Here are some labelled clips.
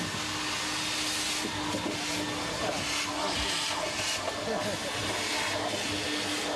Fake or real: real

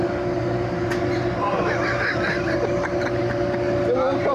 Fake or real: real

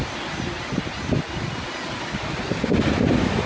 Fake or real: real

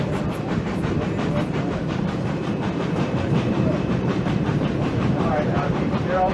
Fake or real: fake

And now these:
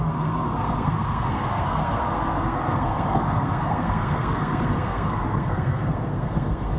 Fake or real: fake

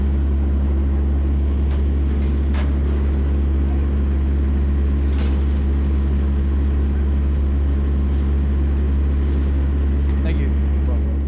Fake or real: real